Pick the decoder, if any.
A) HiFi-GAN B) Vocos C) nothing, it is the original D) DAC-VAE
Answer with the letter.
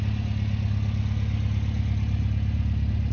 C